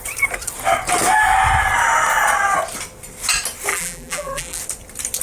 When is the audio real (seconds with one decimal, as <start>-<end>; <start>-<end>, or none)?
0.0-3.7; 4.6-5.2